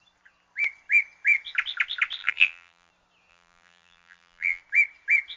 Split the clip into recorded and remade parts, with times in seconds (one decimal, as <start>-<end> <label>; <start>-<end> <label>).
0.0-2.2 recorded; 2.2-2.9 remade; 2.9-3.3 recorded; 3.3-4.6 remade; 4.6-5.4 recorded